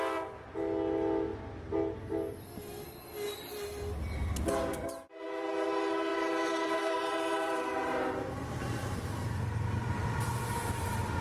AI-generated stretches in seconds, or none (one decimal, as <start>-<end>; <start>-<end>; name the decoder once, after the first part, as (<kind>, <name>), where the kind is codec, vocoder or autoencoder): 6.1-10.4 (vocoder, BigVGAN v2)